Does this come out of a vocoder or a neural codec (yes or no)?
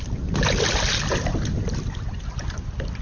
no